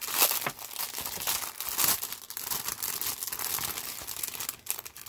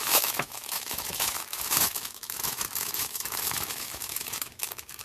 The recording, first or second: first